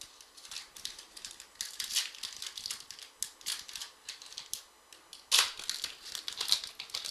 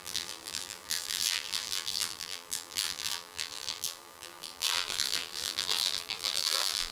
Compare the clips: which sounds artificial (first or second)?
second